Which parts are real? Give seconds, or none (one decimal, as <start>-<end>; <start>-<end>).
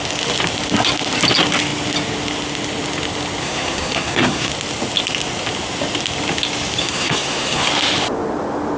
0.0-3.4; 4.5-6.8; 7.7-8.8